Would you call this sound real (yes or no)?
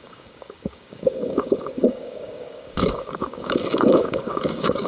no